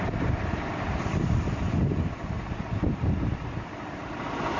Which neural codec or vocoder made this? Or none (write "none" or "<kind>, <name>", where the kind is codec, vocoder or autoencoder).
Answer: vocoder, BigVGAN v2